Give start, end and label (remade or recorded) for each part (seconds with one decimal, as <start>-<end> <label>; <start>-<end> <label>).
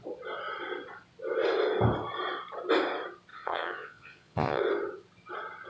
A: 0.0-3.3 recorded; 3.3-4.6 remade; 4.6-5.7 recorded